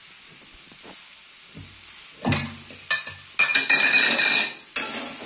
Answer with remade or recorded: recorded